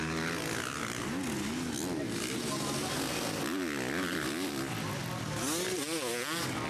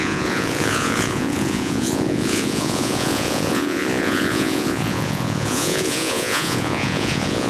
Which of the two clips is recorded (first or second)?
first